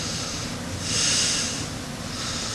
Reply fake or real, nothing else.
real